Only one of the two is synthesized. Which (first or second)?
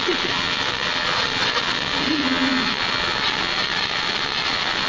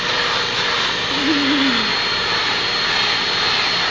first